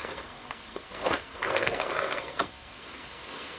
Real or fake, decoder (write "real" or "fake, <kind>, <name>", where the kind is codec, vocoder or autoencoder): fake, codec, SNAC